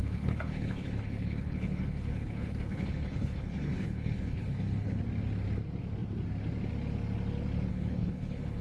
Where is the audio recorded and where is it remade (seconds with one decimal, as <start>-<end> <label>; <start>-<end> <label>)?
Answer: 0.0-5.0 remade; 5.0-7.7 recorded; 7.7-8.6 remade